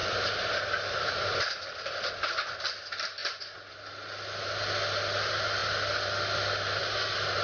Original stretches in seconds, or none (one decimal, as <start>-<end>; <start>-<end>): 2.1-7.4

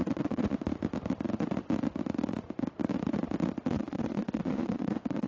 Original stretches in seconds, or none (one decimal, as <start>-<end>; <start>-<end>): 0.5-3.7

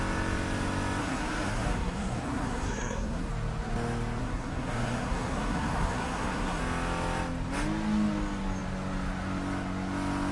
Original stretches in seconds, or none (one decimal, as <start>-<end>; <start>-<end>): 0.0-1.0; 3.3-4.2; 6.6-10.3

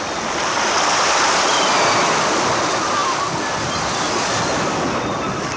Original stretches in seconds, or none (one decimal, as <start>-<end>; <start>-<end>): 0.0-5.6